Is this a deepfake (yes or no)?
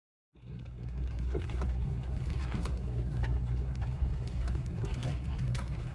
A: yes